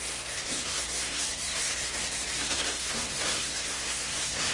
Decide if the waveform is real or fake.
fake